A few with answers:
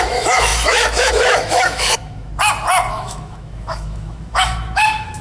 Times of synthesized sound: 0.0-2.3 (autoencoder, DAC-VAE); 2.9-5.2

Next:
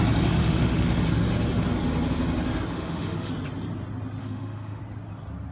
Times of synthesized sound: 0.4-1.0 (autoencoder, DAC-VAE); 2.7-3.3; 4.2-4.8

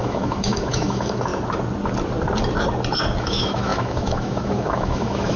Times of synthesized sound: 0.0-1.3 (autoencoder, DAC-VAE); 3.2-5.4

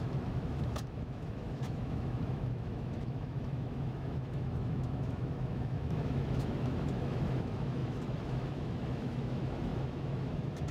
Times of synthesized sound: 0.0-10.7 (autoencoder, DAC-VAE)

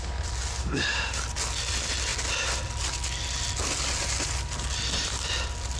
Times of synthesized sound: 0.6-1.2 (autoencoder, DAC-VAE)

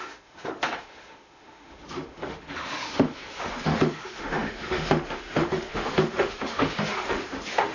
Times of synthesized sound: 0.0-7.7 (autoencoder, DAC-VAE)

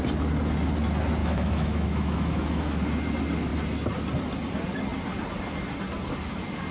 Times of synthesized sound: 1.2-2.8 (autoencoder, DAC-VAE)